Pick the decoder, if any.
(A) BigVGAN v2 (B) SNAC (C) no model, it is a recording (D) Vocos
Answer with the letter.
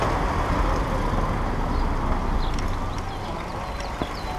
C